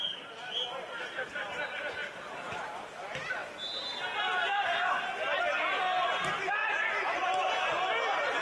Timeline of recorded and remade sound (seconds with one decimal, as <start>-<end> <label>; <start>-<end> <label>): 0.0-2.0 recorded; 2.0-2.6 remade; 2.6-8.4 recorded